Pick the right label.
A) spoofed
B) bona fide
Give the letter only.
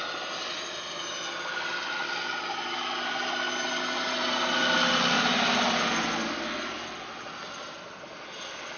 B